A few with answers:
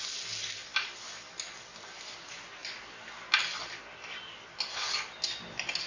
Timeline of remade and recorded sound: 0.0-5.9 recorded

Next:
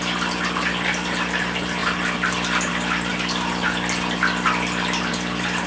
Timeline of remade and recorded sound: 0.0-5.7 recorded

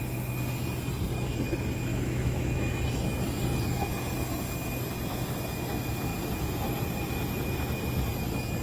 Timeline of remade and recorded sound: 0.0-1.9 recorded; 1.9-2.7 remade; 2.7-8.6 recorded